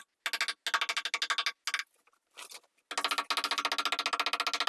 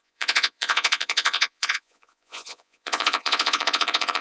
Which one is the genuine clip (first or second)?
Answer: first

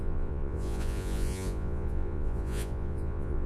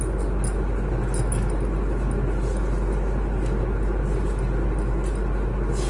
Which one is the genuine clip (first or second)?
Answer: second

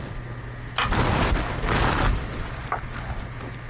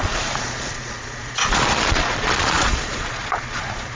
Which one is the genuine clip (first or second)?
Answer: first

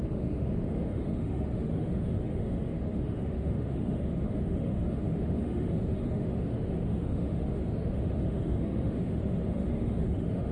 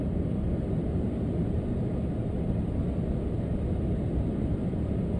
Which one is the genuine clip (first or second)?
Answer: second